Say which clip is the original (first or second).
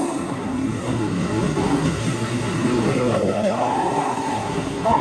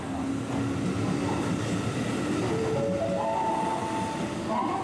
second